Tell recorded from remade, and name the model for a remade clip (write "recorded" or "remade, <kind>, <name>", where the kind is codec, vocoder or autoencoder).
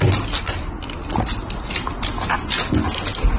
recorded